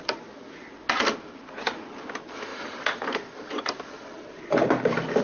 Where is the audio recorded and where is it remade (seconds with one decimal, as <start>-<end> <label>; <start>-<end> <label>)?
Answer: 0.0-5.2 recorded